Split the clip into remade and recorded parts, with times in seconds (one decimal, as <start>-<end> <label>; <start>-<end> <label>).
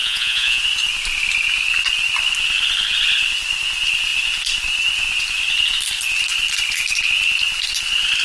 0.0-0.6 remade; 0.6-8.2 recorded